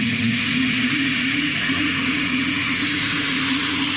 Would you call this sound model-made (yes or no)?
yes